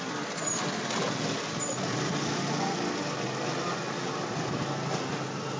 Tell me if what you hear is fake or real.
real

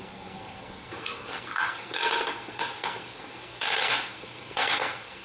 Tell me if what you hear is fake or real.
fake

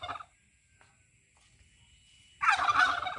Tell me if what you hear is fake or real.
real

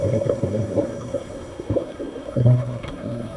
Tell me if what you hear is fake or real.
fake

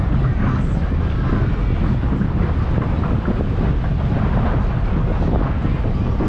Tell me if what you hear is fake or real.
real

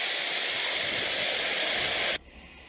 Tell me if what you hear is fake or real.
real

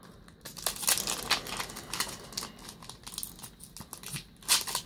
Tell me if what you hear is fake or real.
real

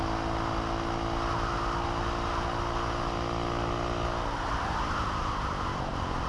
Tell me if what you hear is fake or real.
real